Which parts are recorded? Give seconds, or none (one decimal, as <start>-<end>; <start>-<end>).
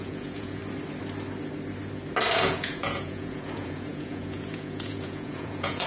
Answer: 0.6-2.4